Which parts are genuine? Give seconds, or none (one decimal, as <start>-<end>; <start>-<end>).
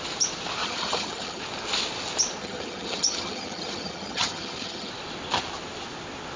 0.0-0.6; 1.4-2.4; 4.9-6.4